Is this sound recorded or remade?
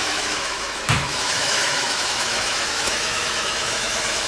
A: remade